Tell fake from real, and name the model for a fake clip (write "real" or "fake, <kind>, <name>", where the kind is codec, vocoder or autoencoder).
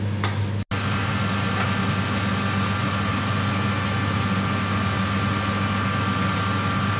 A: real